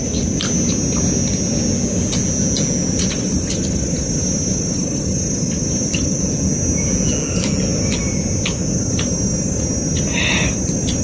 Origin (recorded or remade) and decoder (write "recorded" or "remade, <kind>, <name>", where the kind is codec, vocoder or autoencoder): recorded